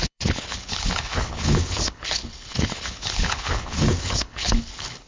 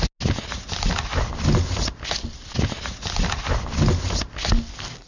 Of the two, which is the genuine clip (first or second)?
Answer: second